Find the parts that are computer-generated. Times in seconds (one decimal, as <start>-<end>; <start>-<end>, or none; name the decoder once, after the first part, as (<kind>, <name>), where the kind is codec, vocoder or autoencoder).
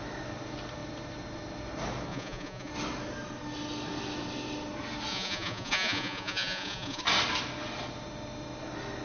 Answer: 2.1-2.7 (vocoder, Vocos); 5.1-7.0